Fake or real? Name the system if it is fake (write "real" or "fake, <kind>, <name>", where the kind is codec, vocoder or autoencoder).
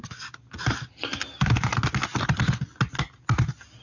real